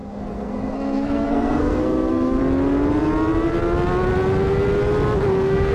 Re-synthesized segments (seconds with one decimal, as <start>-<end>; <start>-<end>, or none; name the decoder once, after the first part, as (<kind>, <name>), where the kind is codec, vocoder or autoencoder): 0.0-2.4 (codec, SNAC); 5.3-5.7